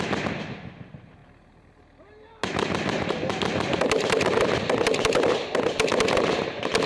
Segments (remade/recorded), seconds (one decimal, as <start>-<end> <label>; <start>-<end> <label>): 0.0-6.9 recorded